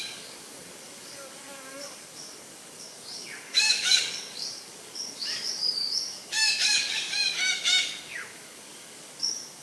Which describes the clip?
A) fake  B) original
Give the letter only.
A